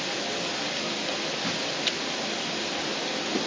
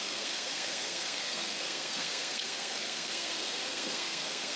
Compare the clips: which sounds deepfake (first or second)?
second